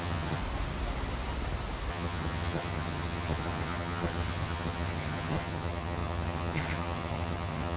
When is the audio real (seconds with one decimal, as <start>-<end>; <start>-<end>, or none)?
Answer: 0.4-1.9